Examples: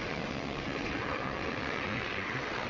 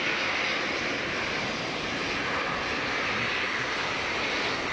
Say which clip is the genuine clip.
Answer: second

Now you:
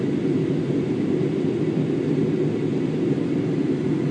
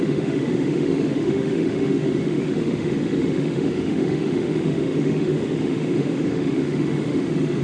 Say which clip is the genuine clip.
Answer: first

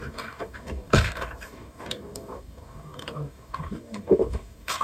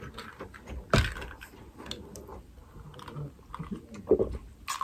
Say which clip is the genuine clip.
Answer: second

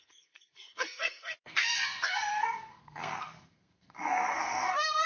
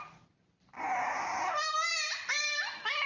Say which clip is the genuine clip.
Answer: second